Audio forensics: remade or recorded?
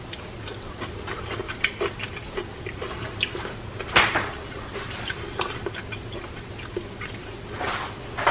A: recorded